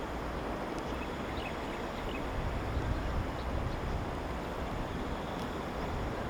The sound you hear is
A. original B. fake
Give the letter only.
A